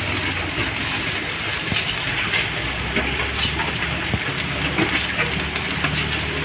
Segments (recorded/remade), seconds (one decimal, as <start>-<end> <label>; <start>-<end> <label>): 0.0-6.4 recorded